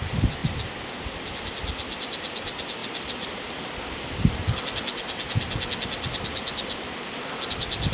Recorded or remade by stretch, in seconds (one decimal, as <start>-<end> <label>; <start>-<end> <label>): 0.0-7.9 recorded